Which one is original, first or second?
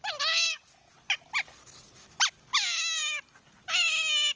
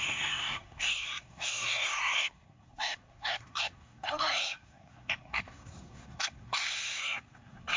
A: first